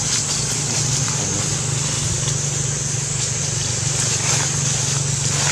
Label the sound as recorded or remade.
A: recorded